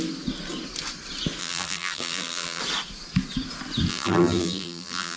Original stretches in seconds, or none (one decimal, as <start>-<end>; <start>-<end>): 0.0-1.4; 2.6-3.9

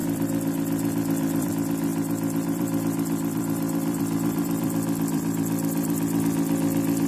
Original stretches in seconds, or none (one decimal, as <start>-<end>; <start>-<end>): 1.5-1.9; 6.2-7.1

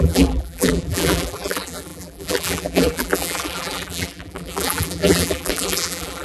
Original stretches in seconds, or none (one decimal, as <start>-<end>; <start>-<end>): none

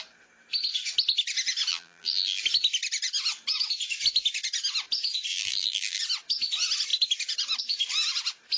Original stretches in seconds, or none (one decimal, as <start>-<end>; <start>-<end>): 0.0-1.7; 2.4-5.3; 6.0-8.6